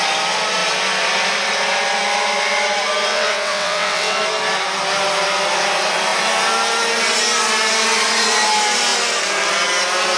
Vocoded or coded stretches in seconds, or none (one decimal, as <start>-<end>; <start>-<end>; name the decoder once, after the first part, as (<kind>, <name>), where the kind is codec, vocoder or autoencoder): 3.1-4.2 (vocoder, WaveNeXt)

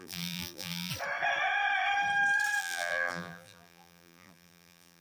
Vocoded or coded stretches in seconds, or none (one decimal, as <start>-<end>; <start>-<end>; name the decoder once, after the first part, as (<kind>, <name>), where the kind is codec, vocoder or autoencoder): 0.0-0.9 (vocoder, BigVGAN v2); 2.6-5.0

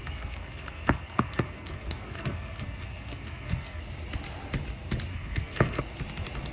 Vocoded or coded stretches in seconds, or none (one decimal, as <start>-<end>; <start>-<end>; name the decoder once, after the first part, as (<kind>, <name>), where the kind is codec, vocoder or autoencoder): 0.0-3.8 (codec, SNAC); 5.1-5.8

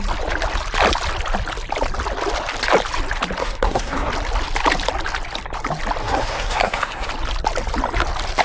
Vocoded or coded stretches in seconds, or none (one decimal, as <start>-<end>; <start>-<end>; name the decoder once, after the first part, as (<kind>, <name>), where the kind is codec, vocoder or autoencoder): 3.4-4.1 (codec, SNAC); 6.0-7.1

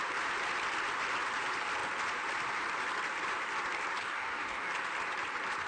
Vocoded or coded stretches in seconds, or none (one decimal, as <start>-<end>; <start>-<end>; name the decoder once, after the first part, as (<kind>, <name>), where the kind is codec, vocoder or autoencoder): 4.0-4.7 (codec, DAC)

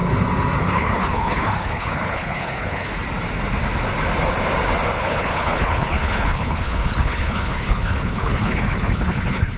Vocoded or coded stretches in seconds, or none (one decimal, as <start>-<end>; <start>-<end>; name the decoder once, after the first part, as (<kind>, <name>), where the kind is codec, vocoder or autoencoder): 0.6-2.9 (codec, HILCodec); 5.0-9.6

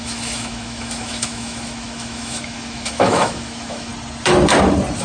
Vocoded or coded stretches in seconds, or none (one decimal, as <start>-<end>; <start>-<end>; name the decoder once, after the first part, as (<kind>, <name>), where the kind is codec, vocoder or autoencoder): 0.0-3.9 (autoencoder, DAC-VAE)